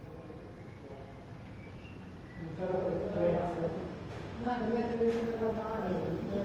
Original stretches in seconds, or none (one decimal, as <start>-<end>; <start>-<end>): 0.0-3.4; 4.6-6.4